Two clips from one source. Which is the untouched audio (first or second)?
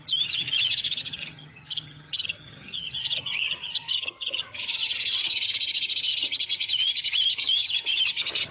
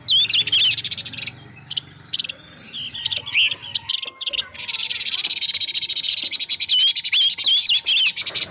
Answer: second